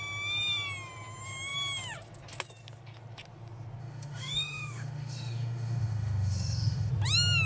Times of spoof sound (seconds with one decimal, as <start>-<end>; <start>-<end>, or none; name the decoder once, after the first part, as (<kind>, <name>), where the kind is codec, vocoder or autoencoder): 3.8-6.9 (autoencoder, DAC-VAE)